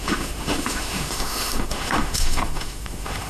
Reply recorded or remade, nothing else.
remade